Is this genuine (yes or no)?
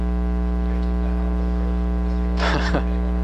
yes